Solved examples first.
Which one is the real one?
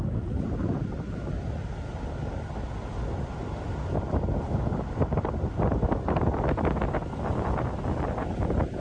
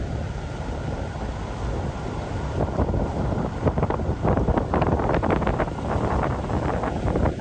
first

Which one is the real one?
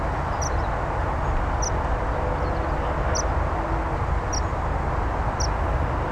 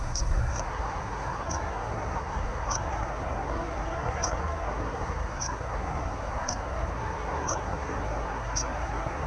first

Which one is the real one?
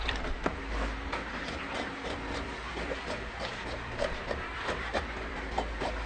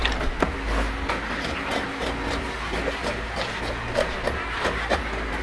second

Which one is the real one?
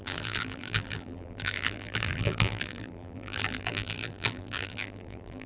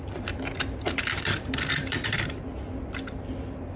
second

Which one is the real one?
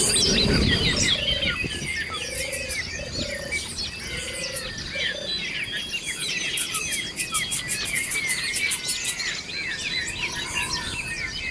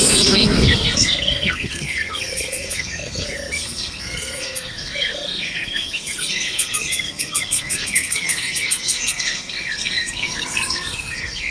first